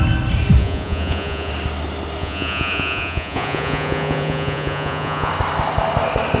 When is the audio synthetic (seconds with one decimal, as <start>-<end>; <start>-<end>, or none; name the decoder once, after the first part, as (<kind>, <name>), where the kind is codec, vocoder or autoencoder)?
0.6-1.5 (vocoder, Vocos); 2.2-5.3